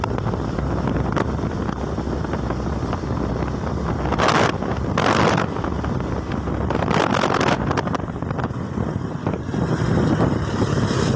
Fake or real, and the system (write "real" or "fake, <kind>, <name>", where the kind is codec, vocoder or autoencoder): real